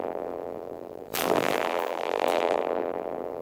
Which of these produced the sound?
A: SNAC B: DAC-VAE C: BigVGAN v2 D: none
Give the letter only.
C